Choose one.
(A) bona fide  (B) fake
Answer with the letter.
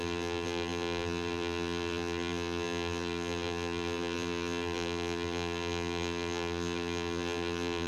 B